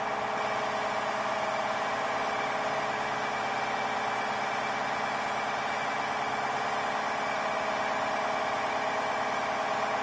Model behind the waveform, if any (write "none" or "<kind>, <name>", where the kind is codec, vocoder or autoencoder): none